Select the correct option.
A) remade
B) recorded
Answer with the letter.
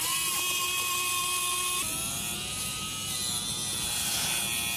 B